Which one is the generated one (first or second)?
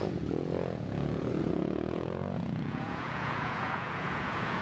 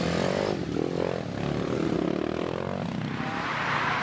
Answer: first